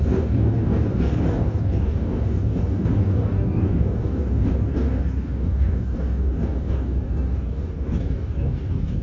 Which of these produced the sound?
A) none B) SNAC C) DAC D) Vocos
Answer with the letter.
C